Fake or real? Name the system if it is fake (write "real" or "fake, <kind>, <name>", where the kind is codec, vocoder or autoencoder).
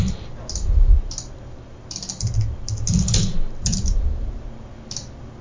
real